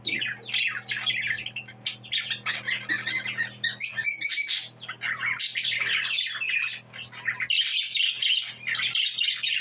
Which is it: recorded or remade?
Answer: recorded